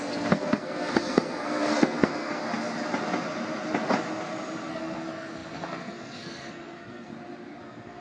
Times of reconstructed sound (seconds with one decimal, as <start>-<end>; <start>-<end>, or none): 0.0-2.4; 4.7-7.1; 7.6-8.0